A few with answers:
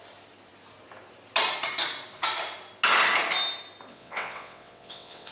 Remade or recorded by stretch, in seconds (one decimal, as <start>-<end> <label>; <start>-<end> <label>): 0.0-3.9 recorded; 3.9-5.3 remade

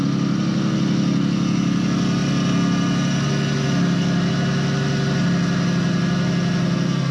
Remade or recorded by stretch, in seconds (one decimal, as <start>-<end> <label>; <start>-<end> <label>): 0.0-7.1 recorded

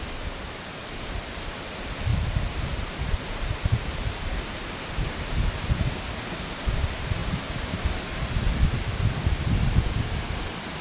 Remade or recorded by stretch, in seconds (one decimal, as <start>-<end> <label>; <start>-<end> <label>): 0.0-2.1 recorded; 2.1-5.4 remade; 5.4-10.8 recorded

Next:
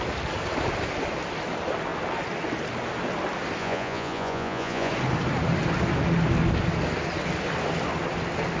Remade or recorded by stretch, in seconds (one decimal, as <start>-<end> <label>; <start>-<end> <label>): 0.0-3.6 recorded; 3.6-4.9 remade; 4.9-8.6 recorded

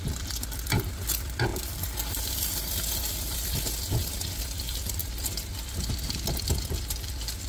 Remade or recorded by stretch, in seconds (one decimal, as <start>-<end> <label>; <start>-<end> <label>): 0.0-1.5 recorded; 1.5-2.2 remade; 2.2-7.5 recorded

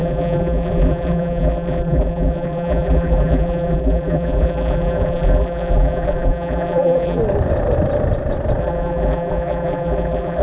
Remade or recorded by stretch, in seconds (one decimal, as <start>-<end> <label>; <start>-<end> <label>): 0.0-7.2 remade; 7.2-8.6 recorded; 8.6-10.4 remade

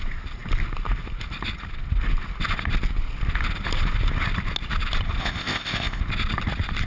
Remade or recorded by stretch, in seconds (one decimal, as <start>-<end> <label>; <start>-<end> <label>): 0.0-5.2 recorded; 5.2-6.0 remade; 6.0-6.9 recorded

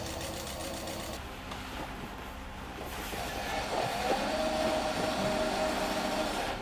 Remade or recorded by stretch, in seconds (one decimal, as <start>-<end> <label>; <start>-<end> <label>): 0.0-6.6 recorded